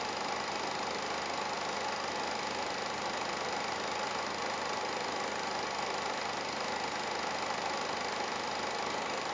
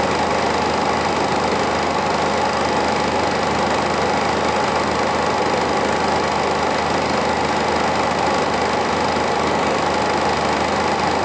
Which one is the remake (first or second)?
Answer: first